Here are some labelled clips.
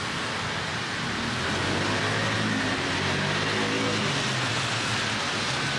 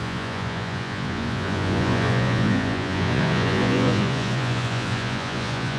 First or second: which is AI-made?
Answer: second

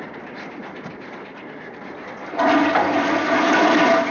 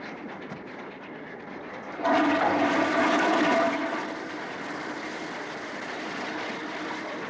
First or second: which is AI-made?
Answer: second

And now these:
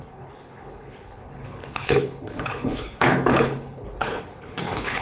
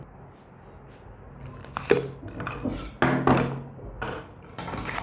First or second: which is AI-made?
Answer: first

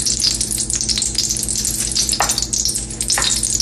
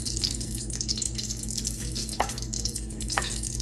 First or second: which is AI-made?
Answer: second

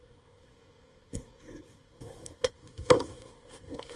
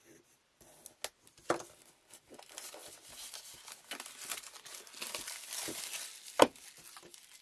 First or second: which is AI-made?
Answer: first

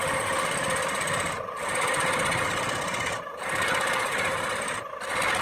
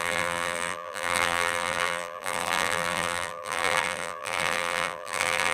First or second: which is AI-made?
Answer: second